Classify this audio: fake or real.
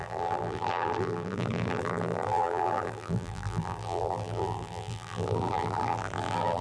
fake